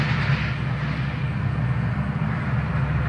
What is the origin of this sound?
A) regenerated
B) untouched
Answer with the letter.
B